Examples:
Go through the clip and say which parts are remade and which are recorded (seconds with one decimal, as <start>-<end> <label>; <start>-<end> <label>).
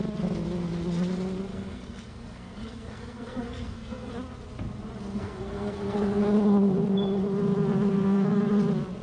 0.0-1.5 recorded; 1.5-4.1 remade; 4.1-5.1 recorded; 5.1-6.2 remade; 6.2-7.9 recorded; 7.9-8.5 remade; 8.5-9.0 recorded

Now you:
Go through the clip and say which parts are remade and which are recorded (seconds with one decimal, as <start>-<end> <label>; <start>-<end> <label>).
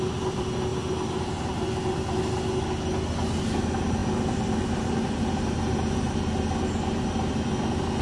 0.0-8.0 recorded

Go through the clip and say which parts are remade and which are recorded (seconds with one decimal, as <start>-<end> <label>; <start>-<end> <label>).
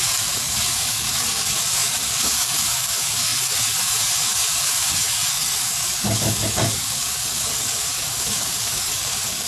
0.0-9.5 remade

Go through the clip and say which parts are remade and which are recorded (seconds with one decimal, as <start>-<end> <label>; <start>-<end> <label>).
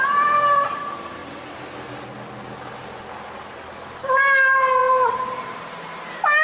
0.0-6.4 recorded